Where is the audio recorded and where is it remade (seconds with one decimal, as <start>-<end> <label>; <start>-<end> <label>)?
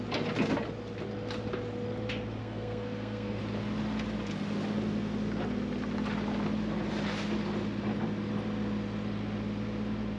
0.0-2.4 recorded; 2.4-3.4 remade; 3.4-10.2 recorded